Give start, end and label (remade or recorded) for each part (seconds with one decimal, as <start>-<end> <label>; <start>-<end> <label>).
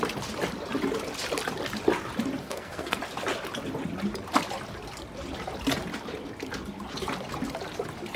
0.0-2.4 recorded; 2.4-3.0 remade; 3.0-8.2 recorded